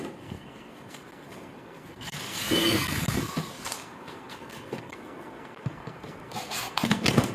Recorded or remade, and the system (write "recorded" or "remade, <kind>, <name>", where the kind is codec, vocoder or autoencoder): remade, codec, SNAC